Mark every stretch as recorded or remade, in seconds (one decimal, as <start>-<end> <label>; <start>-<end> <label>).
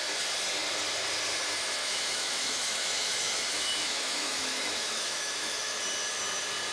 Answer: 0.0-1.8 recorded; 1.8-5.8 remade; 5.8-6.7 recorded